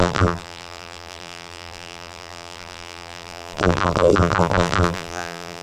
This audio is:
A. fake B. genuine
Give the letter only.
A